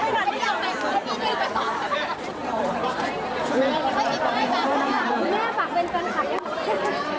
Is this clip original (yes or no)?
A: no